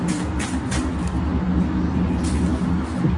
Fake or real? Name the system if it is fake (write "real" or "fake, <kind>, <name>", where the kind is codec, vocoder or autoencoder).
real